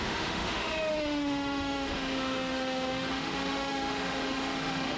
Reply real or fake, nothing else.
fake